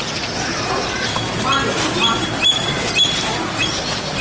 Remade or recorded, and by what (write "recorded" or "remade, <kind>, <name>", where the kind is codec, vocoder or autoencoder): recorded